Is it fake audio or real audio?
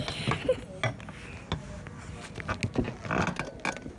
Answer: real